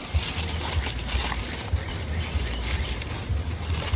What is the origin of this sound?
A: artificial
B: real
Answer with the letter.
B